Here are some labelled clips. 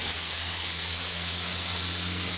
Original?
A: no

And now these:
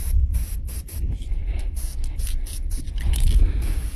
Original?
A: yes